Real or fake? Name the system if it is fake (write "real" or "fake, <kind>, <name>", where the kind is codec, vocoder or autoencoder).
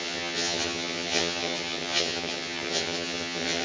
fake, vocoder, HiFi-GAN